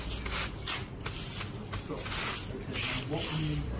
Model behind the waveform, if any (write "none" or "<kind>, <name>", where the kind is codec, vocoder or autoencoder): none